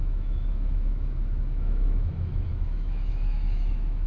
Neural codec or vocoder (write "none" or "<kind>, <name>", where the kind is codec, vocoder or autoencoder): autoencoder, DAC-VAE